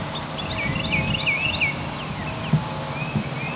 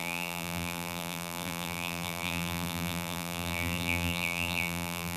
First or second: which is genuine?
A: first